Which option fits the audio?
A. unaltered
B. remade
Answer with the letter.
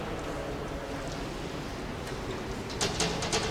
A